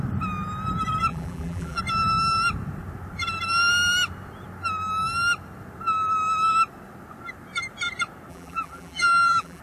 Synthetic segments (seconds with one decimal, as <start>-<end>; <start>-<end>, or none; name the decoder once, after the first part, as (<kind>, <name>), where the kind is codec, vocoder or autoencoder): 1.1-1.8 (vocoder, BigVGAN v2); 8.3-9.6